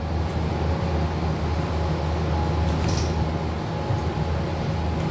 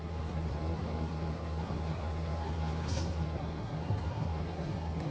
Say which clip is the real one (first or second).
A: first